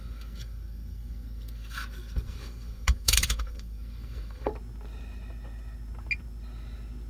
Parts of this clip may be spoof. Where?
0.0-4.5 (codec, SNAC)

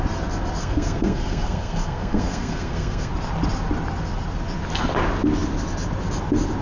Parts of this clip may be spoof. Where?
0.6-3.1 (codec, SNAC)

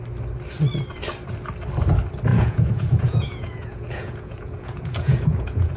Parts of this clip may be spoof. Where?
2.3-5.8 (vocoder, Vocos)

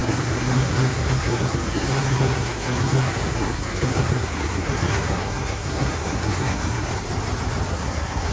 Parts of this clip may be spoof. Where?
0.0-6.9 (codec, SNAC); 7.7-8.3

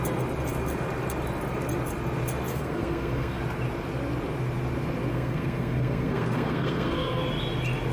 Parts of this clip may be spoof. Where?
2.5-3.4 (codec, SNAC); 5.1-7.2